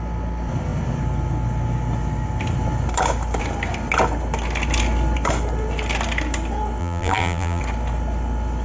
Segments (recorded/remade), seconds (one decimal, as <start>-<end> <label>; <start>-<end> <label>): 0.0-6.8 recorded; 6.8-7.6 remade; 7.6-8.6 recorded